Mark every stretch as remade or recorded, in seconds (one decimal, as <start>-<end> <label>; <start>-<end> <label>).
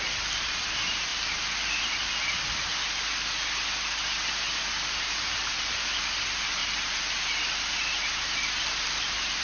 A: 0.0-6.6 recorded; 6.6-9.4 remade